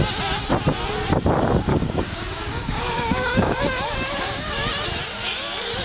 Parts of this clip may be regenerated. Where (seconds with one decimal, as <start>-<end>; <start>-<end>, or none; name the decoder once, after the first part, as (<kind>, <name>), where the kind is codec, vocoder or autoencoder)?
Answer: 1.7-4.7 (codec, DAC)